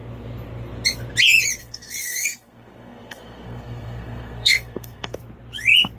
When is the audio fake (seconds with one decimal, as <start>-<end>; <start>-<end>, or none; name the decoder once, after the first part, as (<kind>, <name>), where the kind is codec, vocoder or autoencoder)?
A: 1.6-5.2 (codec, SNAC)